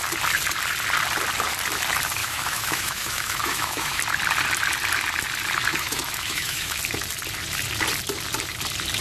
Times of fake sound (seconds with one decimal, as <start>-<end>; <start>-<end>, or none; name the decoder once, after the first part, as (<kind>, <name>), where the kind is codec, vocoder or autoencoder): 2.2-4.0 (autoencoder, DAC-VAE); 5.7-6.8